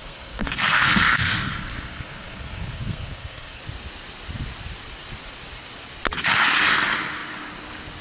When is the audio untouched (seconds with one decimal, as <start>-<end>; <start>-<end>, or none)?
3.6-8.0